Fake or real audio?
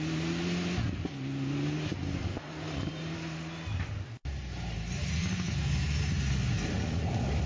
real